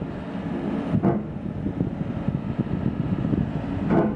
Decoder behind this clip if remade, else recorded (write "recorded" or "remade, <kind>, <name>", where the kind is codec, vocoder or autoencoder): recorded